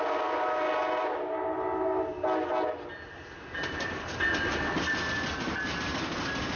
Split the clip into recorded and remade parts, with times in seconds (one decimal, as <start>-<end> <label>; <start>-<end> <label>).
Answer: 0.0-6.6 recorded